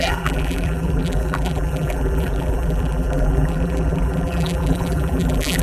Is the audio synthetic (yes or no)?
yes